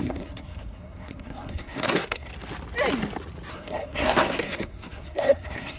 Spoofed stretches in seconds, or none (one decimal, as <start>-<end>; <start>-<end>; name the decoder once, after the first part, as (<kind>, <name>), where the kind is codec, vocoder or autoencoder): 0.0-2.3 (codec, SNAC); 3.5-5.8